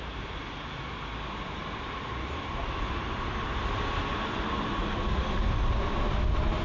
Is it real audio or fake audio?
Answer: real